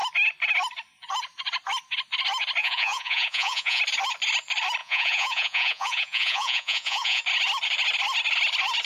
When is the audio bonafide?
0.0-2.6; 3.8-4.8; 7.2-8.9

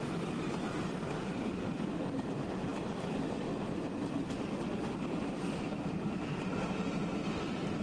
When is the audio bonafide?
0.0-7.8

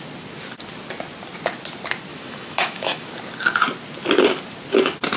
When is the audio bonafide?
0.0-2.1; 3.1-5.2